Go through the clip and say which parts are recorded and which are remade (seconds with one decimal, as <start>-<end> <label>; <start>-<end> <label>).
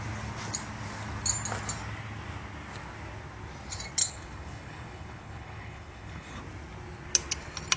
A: 0.0-4.0 recorded; 4.0-6.4 remade; 6.4-7.8 recorded